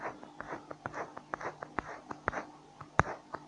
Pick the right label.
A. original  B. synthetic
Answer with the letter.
A